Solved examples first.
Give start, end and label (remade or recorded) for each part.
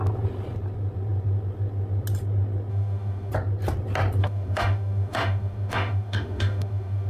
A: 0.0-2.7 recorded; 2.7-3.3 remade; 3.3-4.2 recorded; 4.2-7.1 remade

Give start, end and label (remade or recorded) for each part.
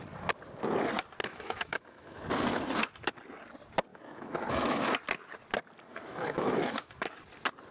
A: 0.0-1.2 recorded; 1.2-2.2 remade; 2.2-3.9 recorded; 3.9-4.8 remade; 4.8-5.9 recorded; 5.9-6.9 remade; 6.9-7.7 recorded